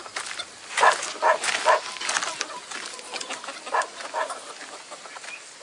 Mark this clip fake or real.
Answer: real